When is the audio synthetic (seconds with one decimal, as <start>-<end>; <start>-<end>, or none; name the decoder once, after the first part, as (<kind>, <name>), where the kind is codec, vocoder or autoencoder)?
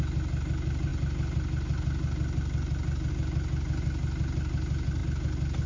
none